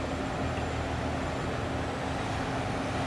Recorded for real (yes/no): yes